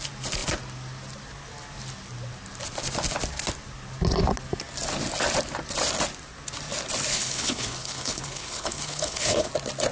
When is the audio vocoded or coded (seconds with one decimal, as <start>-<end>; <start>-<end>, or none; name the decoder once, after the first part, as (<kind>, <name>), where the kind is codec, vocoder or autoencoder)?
7.1-9.5 (codec, HILCodec)